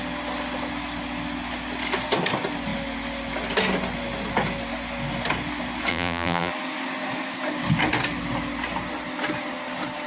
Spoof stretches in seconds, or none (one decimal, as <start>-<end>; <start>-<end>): 5.9-6.5